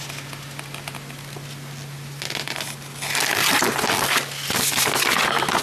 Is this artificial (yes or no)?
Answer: no